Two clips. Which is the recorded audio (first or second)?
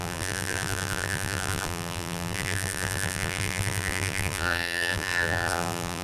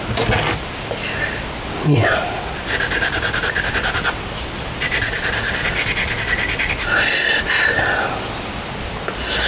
second